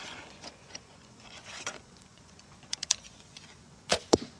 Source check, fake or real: fake